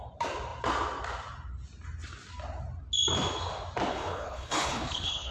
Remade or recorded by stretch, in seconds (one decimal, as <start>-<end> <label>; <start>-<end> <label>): 0.0-3.9 recorded; 3.9-5.3 remade